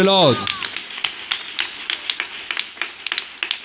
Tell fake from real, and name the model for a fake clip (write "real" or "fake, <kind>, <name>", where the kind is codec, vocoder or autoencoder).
real